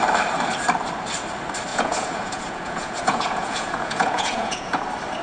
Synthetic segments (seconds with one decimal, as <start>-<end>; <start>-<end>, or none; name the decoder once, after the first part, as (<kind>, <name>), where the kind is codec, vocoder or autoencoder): 1.7-4.8 (vocoder, Vocos)